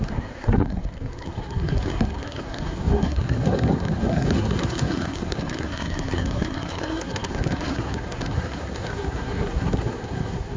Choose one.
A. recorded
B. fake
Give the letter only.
B